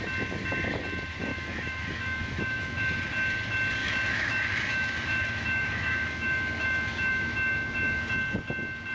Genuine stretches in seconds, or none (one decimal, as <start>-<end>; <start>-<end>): 0.0-1.3; 2.8-3.8; 8.0-8.9